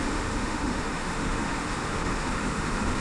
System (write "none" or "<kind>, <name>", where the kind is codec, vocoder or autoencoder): autoencoder, DAC-VAE